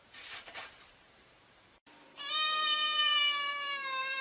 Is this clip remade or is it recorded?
remade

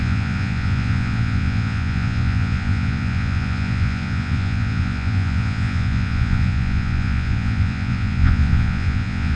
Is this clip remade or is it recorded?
remade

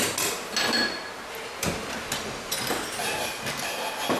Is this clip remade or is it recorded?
recorded